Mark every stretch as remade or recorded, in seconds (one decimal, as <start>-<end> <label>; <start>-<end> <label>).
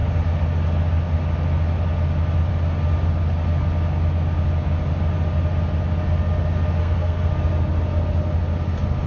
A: 0.0-6.8 recorded; 6.8-7.3 remade; 7.3-9.1 recorded